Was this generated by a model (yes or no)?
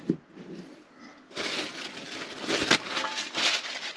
no